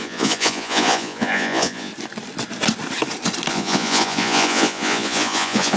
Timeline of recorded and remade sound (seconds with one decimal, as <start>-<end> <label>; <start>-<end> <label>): 0.0-1.9 remade; 1.9-3.5 recorded; 3.5-5.8 remade